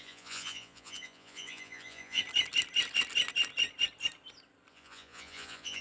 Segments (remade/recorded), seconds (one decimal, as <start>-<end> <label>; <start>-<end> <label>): 0.0-2.2 remade; 2.2-4.7 recorded; 4.7-5.8 remade